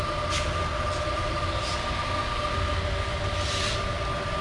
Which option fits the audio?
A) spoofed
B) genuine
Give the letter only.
B